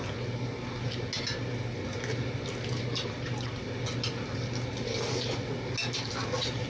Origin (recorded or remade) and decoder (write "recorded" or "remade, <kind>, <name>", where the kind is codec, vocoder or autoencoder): recorded